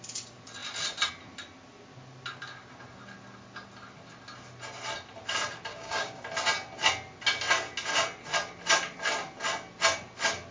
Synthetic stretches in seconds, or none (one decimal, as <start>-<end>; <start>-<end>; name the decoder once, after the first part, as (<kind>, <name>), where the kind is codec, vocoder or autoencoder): 5.7-6.2 (codec, DAC)